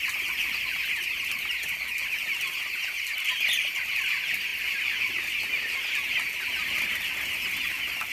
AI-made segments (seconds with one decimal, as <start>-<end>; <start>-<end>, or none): none